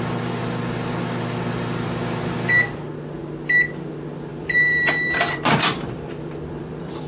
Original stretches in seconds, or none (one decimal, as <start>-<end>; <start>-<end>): 0.0-4.3